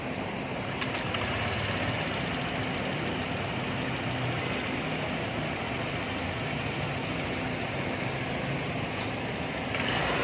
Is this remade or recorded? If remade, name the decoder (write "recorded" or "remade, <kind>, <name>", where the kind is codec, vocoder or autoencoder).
recorded